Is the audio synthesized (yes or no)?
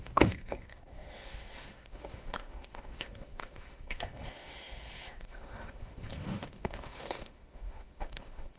yes